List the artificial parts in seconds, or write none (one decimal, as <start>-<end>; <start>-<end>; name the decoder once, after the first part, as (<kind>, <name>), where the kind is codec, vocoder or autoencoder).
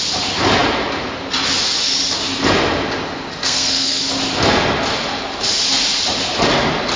3.4-4.0 (codec, SNAC)